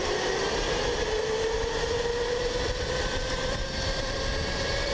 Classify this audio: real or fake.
fake